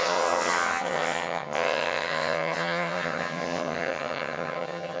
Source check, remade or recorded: remade